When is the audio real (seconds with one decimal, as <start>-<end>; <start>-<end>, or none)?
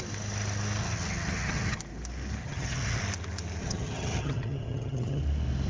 0.0-0.8; 1.8-2.4; 3.0-3.6; 5.2-5.7